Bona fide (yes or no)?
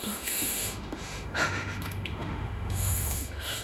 no